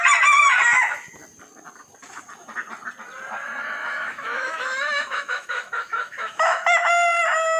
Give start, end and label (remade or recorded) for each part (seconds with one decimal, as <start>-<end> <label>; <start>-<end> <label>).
0.0-3.8 recorded; 3.8-6.9 remade; 6.9-7.6 recorded

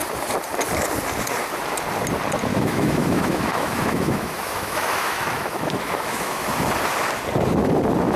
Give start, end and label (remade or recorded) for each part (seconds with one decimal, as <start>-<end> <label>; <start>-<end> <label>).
0.0-2.5 recorded; 2.5-6.7 remade; 6.7-8.2 recorded

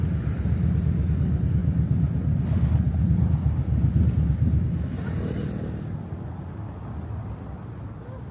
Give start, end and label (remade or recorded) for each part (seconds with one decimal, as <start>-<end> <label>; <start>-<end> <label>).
0.0-8.3 recorded

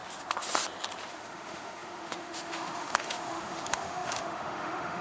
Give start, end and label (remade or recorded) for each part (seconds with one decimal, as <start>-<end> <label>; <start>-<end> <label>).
0.0-1.1 recorded; 1.1-5.0 remade

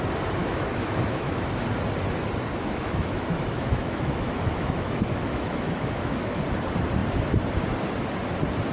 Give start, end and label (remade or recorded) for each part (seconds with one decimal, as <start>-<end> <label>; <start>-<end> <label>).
0.0-0.4 recorded; 0.4-1.4 remade; 1.4-2.5 recorded; 2.5-6.4 remade; 6.4-8.7 recorded

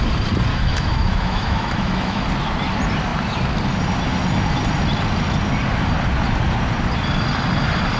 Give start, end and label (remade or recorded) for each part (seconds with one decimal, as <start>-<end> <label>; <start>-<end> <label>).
0.0-0.5 recorded; 0.5-2.2 remade; 2.2-8.0 recorded

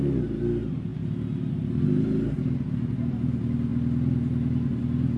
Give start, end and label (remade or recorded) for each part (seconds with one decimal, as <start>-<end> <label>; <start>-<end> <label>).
0.0-5.2 recorded